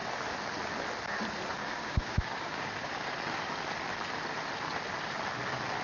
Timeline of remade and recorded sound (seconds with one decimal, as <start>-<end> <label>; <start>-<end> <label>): 0.0-1.6 recorded; 1.6-2.7 remade; 2.7-5.8 recorded